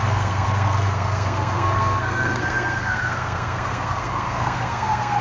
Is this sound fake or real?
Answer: fake